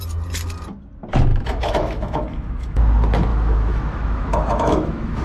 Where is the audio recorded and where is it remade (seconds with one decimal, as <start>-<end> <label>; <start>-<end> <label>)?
0.0-1.3 recorded; 1.3-2.8 remade; 2.8-3.3 recorded; 3.3-5.2 remade